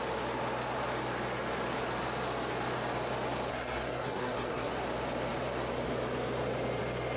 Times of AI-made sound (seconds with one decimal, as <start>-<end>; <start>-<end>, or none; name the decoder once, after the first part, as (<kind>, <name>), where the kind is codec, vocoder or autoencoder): 3.5-4.7 (codec, SNAC)